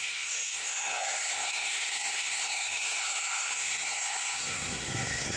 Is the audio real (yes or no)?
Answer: no